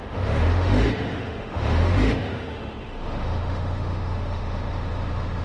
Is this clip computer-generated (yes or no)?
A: yes